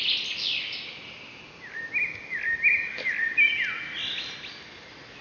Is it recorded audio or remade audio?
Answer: recorded